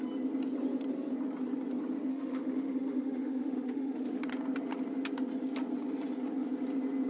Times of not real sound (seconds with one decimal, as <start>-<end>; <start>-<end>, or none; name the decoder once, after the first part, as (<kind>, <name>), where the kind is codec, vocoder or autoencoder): 2.1-4.2 (autoencoder, DAC-VAE)

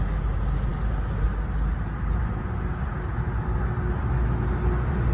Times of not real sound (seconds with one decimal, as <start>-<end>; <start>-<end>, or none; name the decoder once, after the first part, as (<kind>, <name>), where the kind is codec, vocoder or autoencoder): none

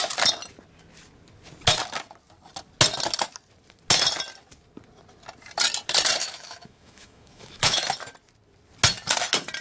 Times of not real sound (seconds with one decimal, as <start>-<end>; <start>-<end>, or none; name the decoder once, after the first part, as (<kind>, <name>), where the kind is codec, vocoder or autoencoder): 6.2-7.8 (autoencoder, DAC-VAE)

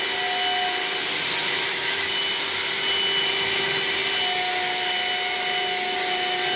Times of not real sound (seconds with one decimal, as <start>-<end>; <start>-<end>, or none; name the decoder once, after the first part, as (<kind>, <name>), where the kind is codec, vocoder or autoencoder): 1.7-2.3 (autoencoder, DAC-VAE)

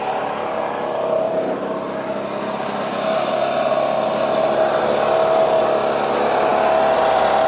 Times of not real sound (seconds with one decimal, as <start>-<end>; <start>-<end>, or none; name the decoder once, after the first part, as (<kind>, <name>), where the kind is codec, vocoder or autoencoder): none

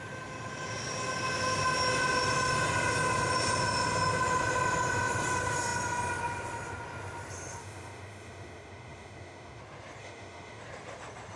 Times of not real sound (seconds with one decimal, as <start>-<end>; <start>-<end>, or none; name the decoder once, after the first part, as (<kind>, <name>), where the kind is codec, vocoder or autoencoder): 7.6-9.6 (autoencoder, DAC-VAE); 10.0-10.6